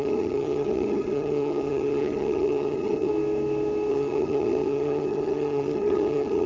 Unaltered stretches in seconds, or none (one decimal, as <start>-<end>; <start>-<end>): 3.1-3.9